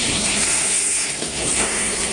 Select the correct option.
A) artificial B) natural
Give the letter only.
A